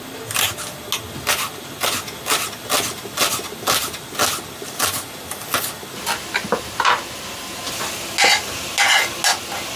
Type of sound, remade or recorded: recorded